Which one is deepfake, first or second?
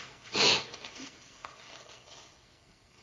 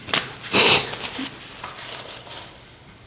first